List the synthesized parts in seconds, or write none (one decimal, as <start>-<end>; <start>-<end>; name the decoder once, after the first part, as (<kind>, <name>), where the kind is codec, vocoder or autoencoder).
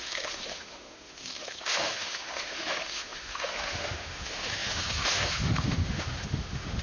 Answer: 0.0-6.8 (autoencoder, DAC-VAE)